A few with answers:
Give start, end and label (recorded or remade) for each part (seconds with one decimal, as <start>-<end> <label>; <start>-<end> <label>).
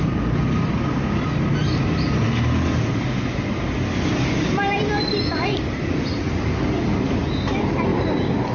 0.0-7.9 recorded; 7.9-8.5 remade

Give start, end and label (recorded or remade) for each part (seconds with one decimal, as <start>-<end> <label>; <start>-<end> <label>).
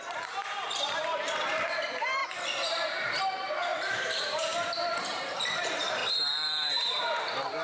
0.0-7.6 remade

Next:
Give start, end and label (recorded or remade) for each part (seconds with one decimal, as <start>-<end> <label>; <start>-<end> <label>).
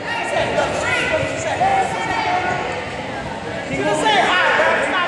0.0-5.1 recorded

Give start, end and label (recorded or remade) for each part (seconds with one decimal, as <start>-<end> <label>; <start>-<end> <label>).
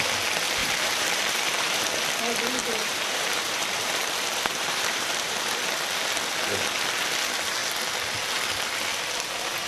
0.0-0.6 recorded; 0.6-1.8 remade; 1.8-2.6 recorded; 2.6-5.6 remade; 5.6-9.7 recorded